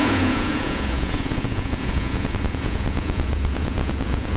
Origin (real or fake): fake